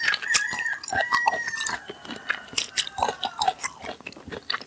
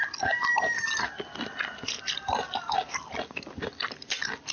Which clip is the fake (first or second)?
first